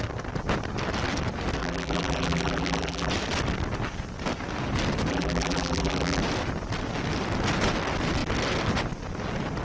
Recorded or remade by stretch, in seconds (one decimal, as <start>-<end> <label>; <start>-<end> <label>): 0.0-1.6 recorded; 1.6-3.1 remade; 3.1-5.1 recorded; 5.1-6.2 remade; 6.2-9.6 recorded